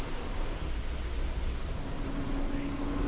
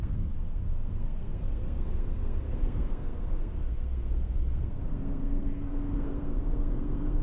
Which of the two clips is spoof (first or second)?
second